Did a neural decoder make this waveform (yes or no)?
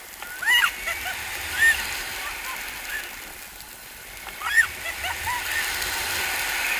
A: no